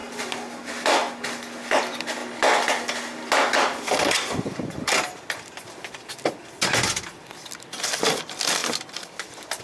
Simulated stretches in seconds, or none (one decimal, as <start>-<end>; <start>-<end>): none